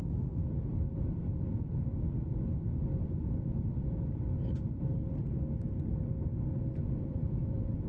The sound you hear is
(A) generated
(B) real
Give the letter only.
A